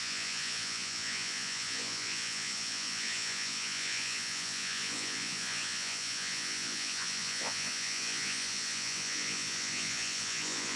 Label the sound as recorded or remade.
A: remade